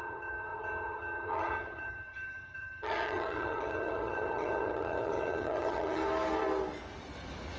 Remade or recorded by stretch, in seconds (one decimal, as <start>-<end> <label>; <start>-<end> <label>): 0.0-6.0 remade; 6.0-7.6 recorded